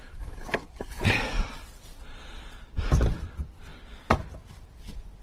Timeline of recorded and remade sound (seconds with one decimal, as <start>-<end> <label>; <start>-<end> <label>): 0.0-0.9 remade; 0.9-5.2 recorded